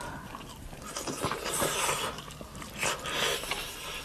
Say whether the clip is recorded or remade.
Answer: recorded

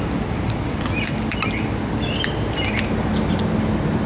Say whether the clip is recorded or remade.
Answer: recorded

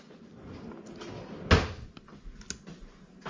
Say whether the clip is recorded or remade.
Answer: recorded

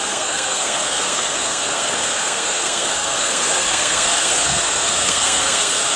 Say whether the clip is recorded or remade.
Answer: remade